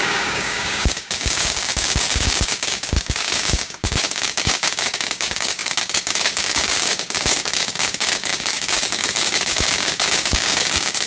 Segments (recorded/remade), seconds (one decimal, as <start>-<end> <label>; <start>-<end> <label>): 0.0-11.1 remade

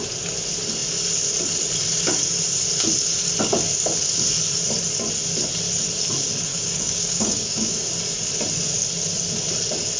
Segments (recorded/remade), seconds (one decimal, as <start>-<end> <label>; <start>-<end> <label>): 0.0-6.5 recorded; 6.5-7.9 remade; 7.9-10.0 recorded

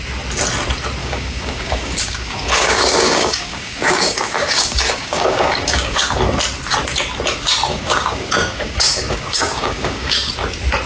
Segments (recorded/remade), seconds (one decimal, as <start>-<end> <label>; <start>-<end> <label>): 0.0-1.0 recorded; 1.0-6.1 remade; 6.1-7.7 recorded; 7.7-10.3 remade; 10.3-10.9 recorded

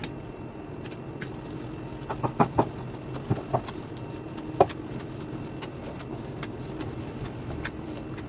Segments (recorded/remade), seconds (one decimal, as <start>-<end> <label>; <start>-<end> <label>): 0.0-6.1 recorded; 6.1-6.6 remade; 6.6-8.3 recorded

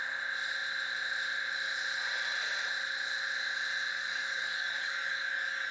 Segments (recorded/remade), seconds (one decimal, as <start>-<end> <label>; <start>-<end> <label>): 0.0-3.9 recorded; 3.9-5.7 remade